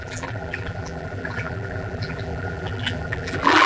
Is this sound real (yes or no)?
no